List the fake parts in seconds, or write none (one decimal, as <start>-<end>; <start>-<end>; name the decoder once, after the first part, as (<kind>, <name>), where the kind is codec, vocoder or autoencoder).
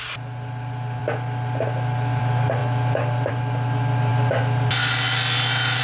2.6-3.3 (vocoder, BigVGAN v2)